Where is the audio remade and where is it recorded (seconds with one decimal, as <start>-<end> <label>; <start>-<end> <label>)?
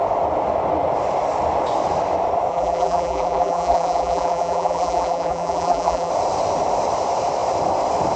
0.0-2.5 recorded; 2.5-6.1 remade; 6.1-8.2 recorded